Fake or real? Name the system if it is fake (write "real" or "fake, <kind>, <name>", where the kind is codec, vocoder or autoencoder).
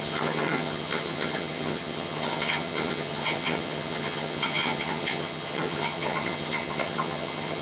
fake, vocoder, HiFi-GAN